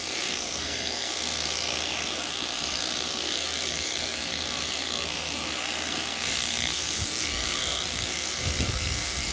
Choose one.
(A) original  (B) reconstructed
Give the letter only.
B